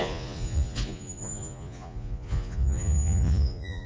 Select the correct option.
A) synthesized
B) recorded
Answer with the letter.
A